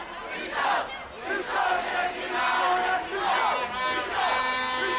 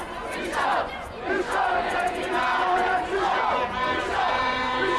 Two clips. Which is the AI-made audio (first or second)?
second